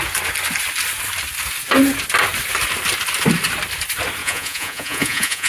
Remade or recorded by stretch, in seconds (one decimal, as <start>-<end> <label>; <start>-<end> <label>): 0.0-4.2 recorded; 4.2-5.5 remade